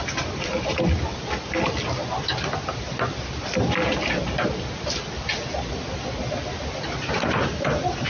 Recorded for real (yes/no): yes